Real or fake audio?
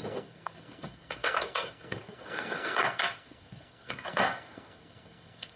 fake